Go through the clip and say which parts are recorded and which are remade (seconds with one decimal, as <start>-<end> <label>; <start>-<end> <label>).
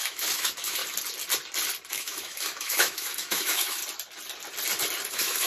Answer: 0.0-0.8 remade; 0.8-1.9 recorded; 1.9-3.8 remade; 3.8-5.1 recorded; 5.1-5.5 remade